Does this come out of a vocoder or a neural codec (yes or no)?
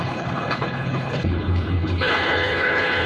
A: yes